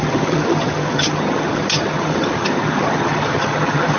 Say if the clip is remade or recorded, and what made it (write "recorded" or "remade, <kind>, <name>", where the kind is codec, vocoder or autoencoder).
remade, vocoder, HiFi-GAN